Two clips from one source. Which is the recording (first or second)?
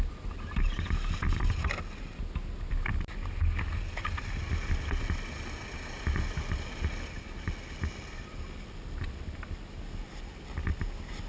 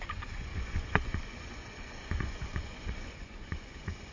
first